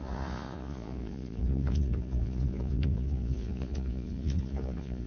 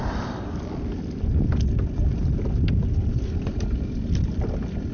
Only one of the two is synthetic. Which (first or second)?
first